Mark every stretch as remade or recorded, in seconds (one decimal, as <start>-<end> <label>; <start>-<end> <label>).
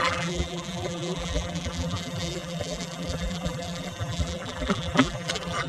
0.0-5.7 remade